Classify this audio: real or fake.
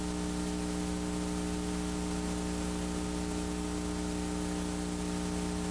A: real